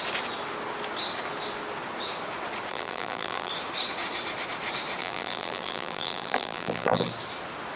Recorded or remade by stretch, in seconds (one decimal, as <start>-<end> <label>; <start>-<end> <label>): 0.0-2.7 recorded; 2.7-3.5 remade; 3.5-5.0 recorded; 5.0-7.1 remade; 7.1-7.8 recorded

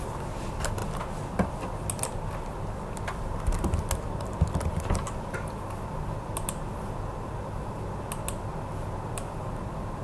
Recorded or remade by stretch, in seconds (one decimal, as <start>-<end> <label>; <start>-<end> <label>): 0.0-10.0 recorded

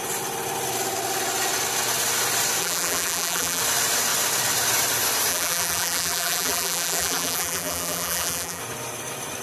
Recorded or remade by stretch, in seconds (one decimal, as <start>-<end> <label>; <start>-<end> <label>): 0.0-2.6 recorded; 2.6-3.6 remade; 3.6-5.3 recorded; 5.3-8.6 remade; 8.6-9.4 recorded

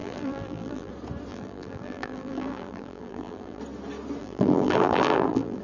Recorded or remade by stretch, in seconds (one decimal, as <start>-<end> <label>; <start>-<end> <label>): 0.0-0.9 remade; 0.9-1.3 recorded; 1.3-3.6 remade; 3.6-4.2 recorded; 4.2-5.6 remade

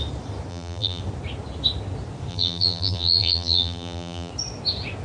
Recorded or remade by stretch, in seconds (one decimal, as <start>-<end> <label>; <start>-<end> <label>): 0.0-0.5 recorded; 0.5-1.0 remade; 1.0-2.3 recorded; 2.3-4.3 remade; 4.3-5.0 recorded

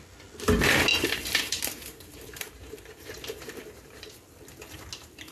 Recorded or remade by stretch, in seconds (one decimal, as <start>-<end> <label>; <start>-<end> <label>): 0.0-0.9 recorded; 0.9-4.1 remade; 4.1-5.3 recorded